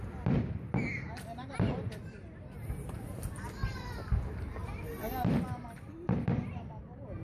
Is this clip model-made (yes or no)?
yes